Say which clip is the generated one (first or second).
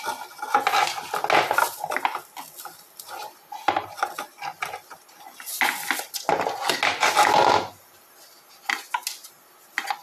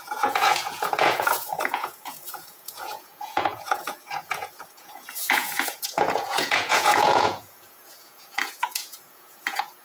second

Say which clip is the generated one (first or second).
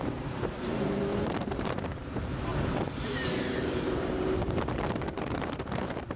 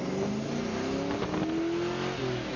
first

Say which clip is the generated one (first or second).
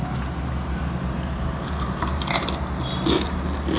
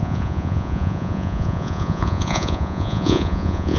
second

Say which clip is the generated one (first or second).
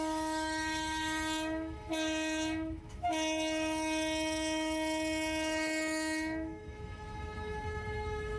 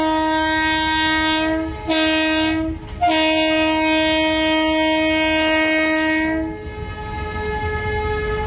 first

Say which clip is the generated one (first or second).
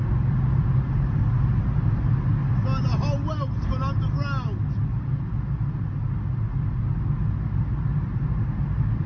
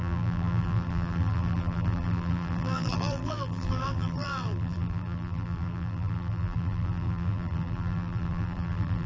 second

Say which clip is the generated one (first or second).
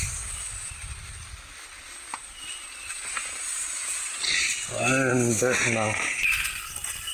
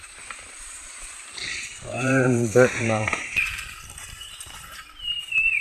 second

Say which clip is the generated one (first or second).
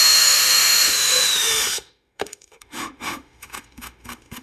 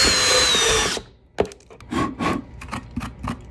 first